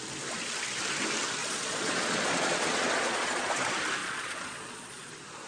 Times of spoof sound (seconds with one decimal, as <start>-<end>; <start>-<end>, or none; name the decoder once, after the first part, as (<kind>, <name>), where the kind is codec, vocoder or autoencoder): 1.4-3.5 (vocoder, Vocos); 4.0-5.1